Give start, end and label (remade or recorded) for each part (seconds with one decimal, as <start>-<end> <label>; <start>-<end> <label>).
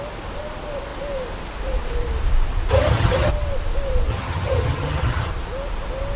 0.0-2.7 recorded; 2.7-3.3 remade; 3.3-4.1 recorded; 4.1-5.3 remade; 5.3-6.2 recorded